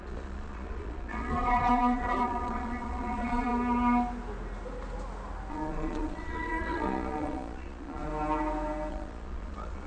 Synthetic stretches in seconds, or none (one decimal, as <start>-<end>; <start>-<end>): 0.0-3.5; 5.5-8.1; 8.9-9.9